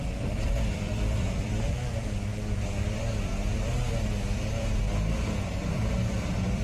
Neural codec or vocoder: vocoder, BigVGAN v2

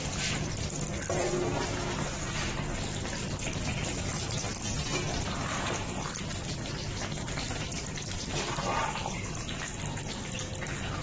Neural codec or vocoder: none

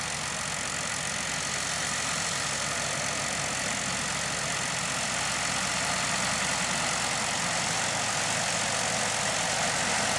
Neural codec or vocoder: none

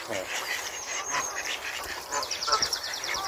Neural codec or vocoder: vocoder, BigVGAN v2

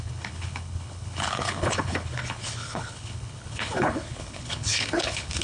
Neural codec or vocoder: codec, HILCodec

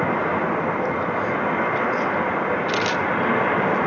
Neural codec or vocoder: none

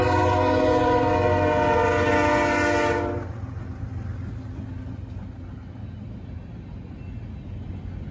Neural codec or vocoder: none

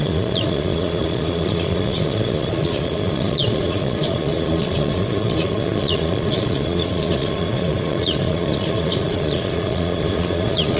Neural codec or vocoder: vocoder, Vocos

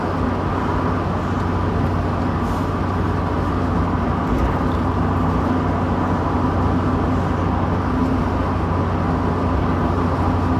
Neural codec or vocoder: none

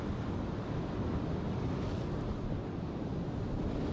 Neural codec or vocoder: none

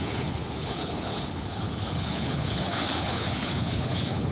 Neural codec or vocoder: codec, HILCodec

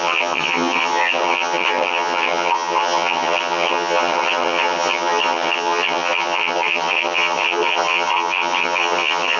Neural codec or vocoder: vocoder, HiFi-GAN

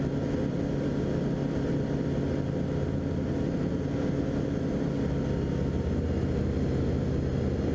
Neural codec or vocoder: none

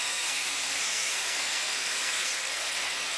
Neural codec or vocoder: codec, SNAC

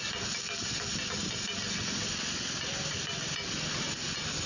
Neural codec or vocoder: none